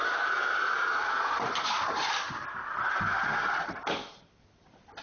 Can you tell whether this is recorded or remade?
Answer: recorded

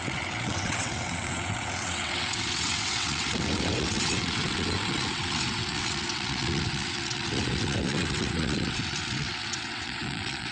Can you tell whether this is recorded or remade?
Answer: remade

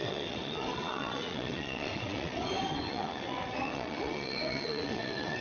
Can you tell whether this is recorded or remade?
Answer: remade